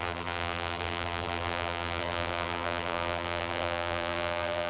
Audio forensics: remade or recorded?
remade